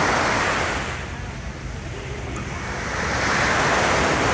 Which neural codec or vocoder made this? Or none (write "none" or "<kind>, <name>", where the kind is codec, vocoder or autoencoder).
none